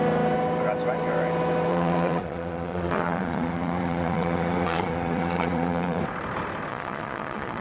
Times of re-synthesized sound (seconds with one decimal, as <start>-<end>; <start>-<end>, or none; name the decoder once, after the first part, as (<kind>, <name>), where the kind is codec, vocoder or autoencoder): 1.7-6.0 (vocoder, Vocos); 6.7-7.6